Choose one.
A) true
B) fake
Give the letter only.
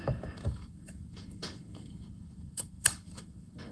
B